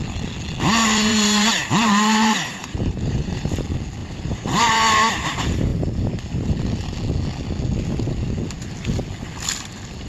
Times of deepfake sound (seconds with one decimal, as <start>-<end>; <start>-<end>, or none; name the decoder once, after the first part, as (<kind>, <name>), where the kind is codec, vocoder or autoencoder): 1.1-3.5 (vocoder, BigVGAN v2); 4.0-4.7